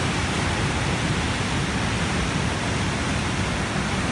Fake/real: real